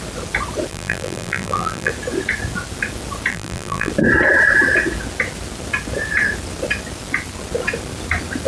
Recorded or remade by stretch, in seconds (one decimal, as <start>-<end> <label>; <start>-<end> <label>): 0.0-0.7 recorded; 0.7-1.9 remade; 1.9-3.3 recorded; 3.3-3.9 remade; 3.9-8.5 recorded